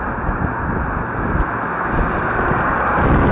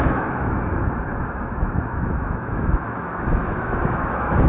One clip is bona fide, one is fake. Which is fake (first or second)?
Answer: second